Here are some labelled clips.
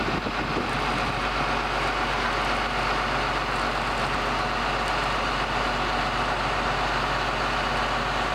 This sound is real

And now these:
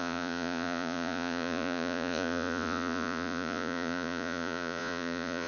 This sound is fake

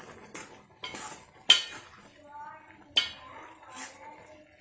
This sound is real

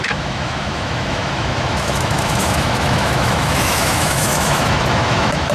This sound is fake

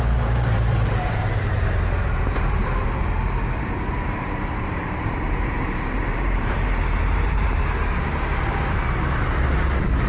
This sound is fake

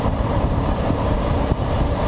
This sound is fake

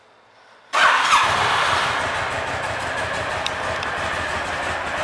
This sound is real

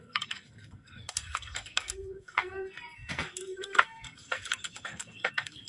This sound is fake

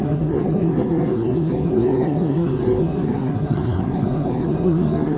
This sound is fake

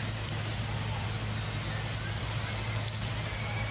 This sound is real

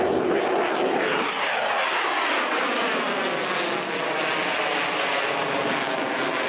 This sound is real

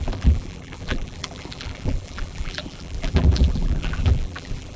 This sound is fake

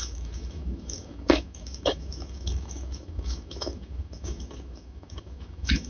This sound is fake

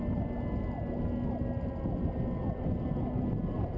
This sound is real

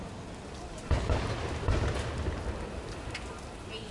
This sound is real